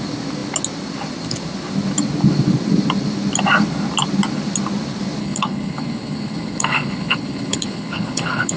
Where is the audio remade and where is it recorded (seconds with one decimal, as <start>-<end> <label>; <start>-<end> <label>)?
0.0-5.2 recorded; 5.2-8.6 remade